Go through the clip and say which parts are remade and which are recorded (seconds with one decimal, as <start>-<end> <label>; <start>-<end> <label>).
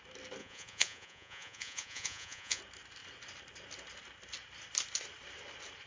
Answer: 0.0-0.4 recorded; 0.4-2.6 remade; 2.6-5.9 recorded